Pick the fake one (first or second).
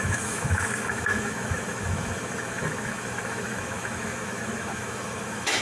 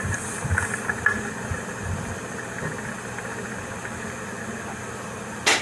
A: first